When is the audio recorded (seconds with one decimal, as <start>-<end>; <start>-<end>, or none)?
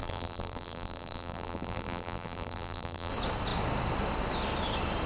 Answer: 3.1-5.1